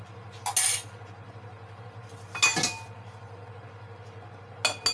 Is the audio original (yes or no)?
yes